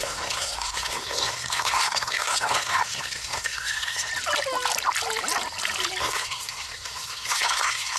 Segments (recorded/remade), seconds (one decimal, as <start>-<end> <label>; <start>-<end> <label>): 0.0-4.1 remade; 4.1-6.0 recorded; 6.0-8.0 remade